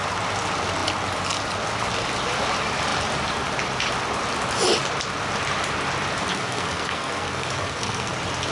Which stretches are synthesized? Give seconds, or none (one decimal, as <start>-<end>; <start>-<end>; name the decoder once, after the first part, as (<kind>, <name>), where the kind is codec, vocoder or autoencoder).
6.3-8.1 (codec, SNAC)

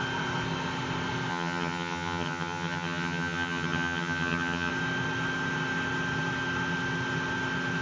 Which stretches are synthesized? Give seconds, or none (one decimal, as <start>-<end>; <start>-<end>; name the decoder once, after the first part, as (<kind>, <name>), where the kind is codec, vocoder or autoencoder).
1.3-4.7 (vocoder, HiFi-GAN)